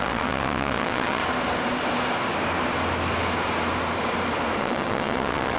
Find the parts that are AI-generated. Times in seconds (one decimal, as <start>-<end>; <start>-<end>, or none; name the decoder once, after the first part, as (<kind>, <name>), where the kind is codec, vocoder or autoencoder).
0.0-1.2 (vocoder, WaveNeXt); 4.6-5.6